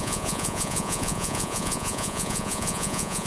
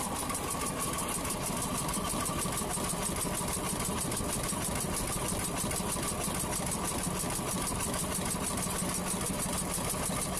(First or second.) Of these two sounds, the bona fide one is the second